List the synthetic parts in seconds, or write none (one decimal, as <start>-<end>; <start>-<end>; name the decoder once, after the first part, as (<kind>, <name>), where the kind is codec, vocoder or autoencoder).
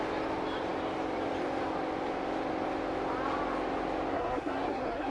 4.1-5.1 (codec, SNAC)